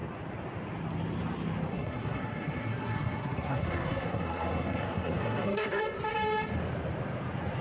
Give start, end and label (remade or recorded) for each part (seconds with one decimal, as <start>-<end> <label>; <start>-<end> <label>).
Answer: 0.0-1.7 recorded; 1.7-5.8 remade; 5.8-7.6 recorded